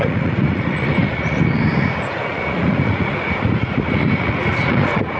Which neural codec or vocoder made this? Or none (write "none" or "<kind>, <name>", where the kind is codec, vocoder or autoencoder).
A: vocoder, Vocos